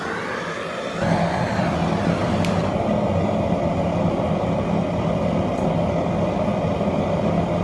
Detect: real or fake real